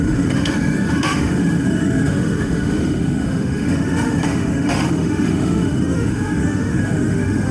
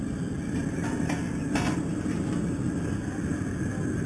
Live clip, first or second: second